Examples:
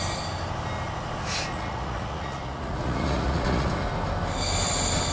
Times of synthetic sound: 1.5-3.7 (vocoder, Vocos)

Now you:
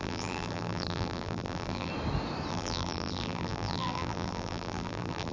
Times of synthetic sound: 0.0-1.9 (vocoder, BigVGAN v2); 2.5-5.3